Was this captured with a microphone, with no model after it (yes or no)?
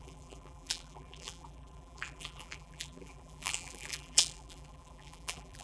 no